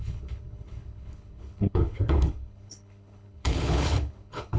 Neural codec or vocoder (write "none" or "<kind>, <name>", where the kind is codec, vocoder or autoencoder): codec, HILCodec